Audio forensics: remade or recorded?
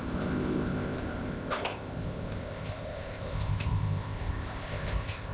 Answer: remade